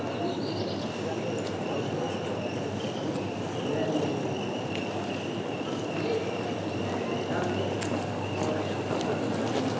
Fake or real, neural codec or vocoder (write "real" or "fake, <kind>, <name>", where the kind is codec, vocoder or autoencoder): real